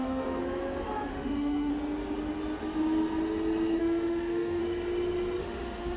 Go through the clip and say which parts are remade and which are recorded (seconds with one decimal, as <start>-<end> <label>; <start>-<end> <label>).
0.0-0.4 remade; 0.4-1.1 recorded; 1.1-1.7 remade; 1.7-3.8 recorded; 3.8-4.6 remade; 4.6-5.4 recorded; 5.4-6.0 remade